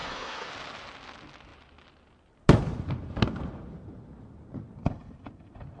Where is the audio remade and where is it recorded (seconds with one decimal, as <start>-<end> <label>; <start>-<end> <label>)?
0.0-0.5 remade; 0.5-5.8 recorded